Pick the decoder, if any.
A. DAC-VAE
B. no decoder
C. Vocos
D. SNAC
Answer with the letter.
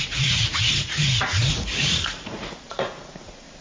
C